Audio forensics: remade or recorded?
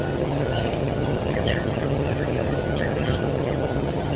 remade